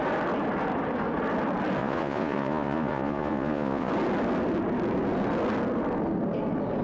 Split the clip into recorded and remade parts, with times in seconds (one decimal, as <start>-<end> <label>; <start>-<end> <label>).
0.0-1.8 recorded; 1.8-3.9 remade; 3.9-6.8 recorded